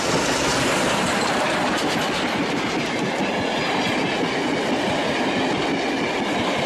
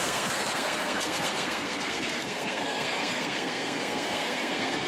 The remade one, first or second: second